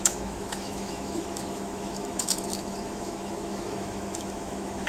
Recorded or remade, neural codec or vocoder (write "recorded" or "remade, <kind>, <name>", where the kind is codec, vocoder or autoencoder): remade, autoencoder, DAC-VAE